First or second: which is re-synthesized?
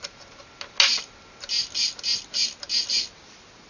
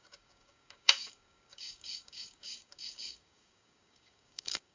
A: second